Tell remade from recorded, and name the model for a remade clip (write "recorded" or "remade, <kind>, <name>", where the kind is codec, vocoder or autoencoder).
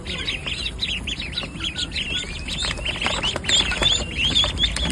recorded